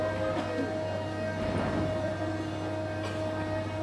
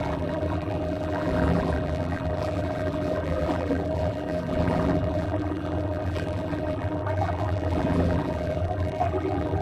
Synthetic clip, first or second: second